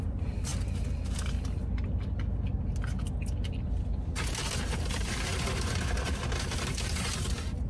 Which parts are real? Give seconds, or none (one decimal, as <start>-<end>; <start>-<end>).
0.0-7.7